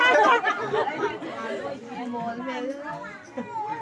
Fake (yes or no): yes